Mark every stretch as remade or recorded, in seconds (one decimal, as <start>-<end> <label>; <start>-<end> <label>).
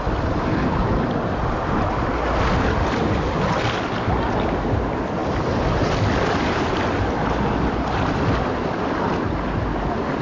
0.0-10.2 recorded